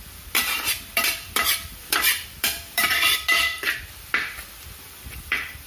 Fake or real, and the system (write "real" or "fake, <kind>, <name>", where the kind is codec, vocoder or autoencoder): fake, vocoder, BigVGAN v2